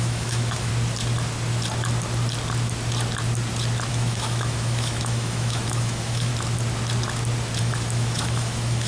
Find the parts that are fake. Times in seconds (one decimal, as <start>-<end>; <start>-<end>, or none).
0.0-0.7; 3.9-6.3; 7.6-8.9